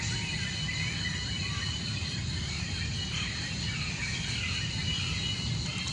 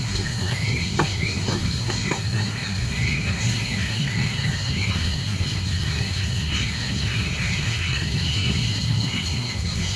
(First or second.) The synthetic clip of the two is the second